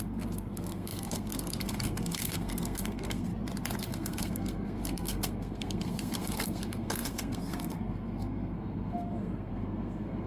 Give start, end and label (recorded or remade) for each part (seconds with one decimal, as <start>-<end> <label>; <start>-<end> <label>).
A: 0.0-3.3 remade; 3.3-3.8 recorded; 3.8-10.3 remade